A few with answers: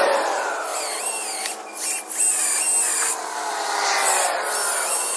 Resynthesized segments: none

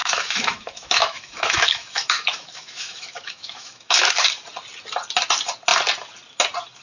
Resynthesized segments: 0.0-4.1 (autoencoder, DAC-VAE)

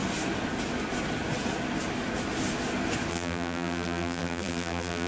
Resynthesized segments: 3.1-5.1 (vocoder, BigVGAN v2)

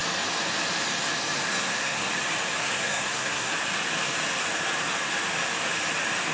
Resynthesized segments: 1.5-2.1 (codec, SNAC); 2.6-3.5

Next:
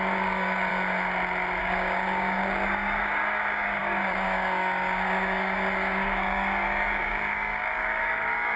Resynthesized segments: 0.0-0.7 (codec, DAC); 1.6-8.6

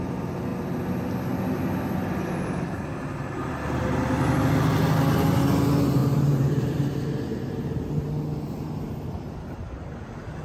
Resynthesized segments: 6.0-7.9 (vocoder, BigVGAN v2)

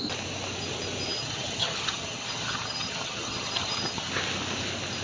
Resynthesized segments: 1.1-4.1 (vocoder, HiFi-GAN)

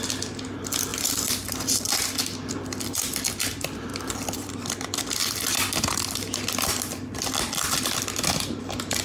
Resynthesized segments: 0.9-1.9 (vocoder, BigVGAN v2); 3.9-8.6